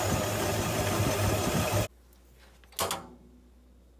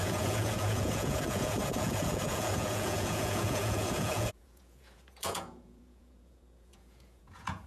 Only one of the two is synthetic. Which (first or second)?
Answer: second